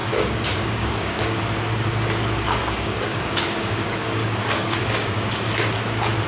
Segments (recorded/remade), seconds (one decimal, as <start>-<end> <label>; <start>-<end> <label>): 0.0-1.4 remade; 1.4-2.6 recorded; 2.6-5.5 remade; 5.5-6.3 recorded